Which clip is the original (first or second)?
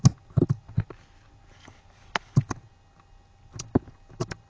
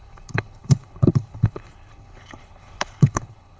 first